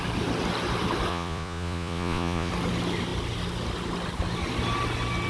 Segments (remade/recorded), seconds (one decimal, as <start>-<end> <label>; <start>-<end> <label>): 0.0-1.1 recorded; 1.1-2.5 remade; 2.5-5.3 recorded